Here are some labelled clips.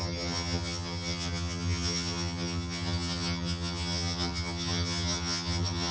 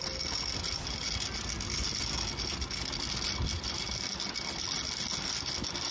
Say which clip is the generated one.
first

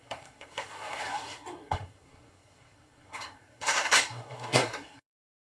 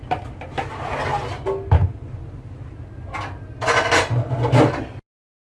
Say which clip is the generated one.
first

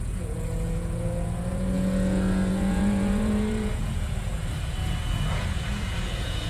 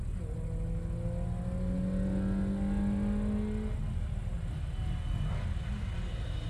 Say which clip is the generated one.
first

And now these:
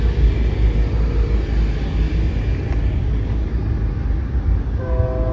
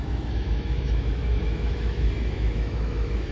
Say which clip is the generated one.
second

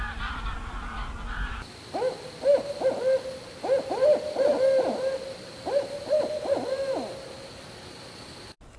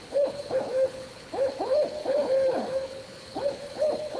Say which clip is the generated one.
second